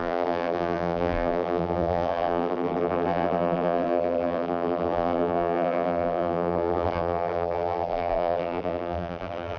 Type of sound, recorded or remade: remade